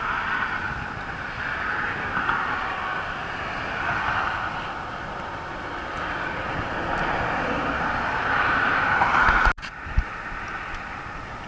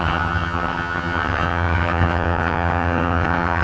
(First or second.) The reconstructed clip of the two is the second